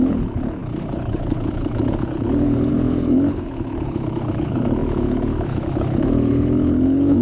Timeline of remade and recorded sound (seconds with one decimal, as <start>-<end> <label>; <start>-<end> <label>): 0.0-7.2 remade